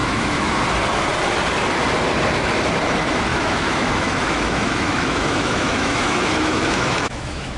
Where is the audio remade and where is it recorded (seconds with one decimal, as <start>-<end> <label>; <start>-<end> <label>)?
0.0-0.6 remade; 0.6-3.3 recorded; 3.3-7.6 remade